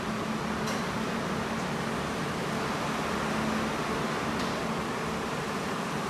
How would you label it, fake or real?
real